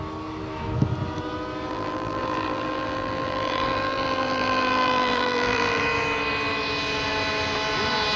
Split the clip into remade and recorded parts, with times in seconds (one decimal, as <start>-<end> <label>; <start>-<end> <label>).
0.0-1.7 recorded; 1.7-5.8 remade; 5.8-8.2 recorded